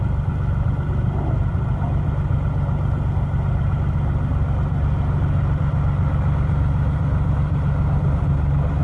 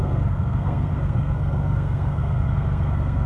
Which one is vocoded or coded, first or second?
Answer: second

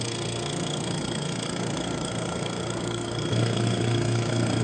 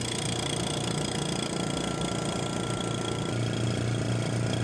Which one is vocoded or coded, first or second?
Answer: first